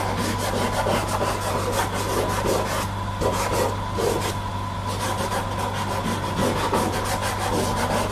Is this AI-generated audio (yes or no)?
no